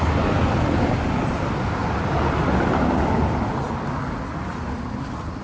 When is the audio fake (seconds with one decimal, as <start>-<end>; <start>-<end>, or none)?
none